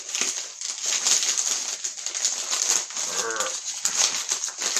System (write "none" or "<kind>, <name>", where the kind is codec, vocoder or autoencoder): none